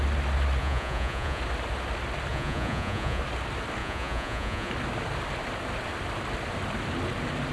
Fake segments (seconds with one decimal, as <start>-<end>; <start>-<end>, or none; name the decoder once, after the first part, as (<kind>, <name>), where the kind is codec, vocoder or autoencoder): 0.6-1.4 (vocoder, Vocos); 2.3-3.2; 3.8-4.7